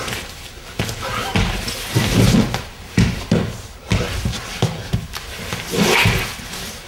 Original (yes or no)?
yes